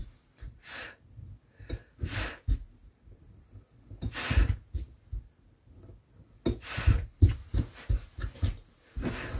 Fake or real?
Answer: real